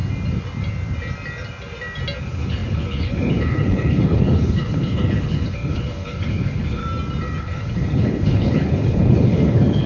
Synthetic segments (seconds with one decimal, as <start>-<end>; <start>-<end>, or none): 2.2-6.8; 7.4-9.9